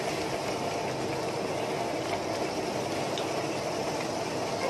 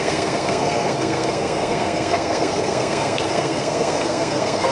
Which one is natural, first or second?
first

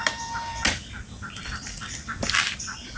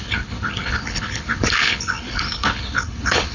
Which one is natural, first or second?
first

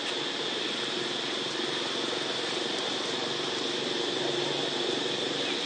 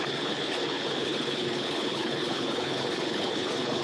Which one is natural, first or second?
first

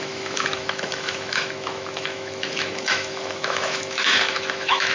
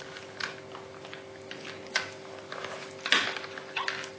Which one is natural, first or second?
second